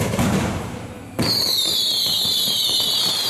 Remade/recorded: remade